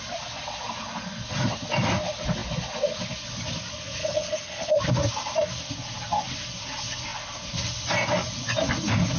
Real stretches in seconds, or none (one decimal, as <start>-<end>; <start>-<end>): 0.0-4.0; 4.8-9.2